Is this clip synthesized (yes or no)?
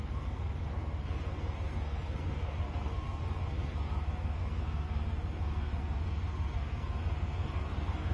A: yes